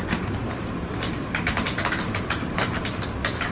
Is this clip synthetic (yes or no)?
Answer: no